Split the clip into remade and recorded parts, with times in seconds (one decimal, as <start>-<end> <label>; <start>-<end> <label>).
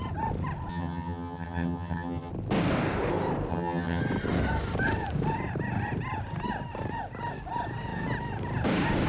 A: 0.0-0.7 recorded; 0.7-2.3 remade; 2.3-3.5 recorded; 3.5-4.0 remade; 4.0-9.1 recorded